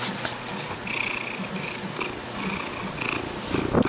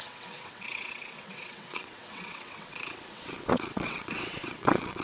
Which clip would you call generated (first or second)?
second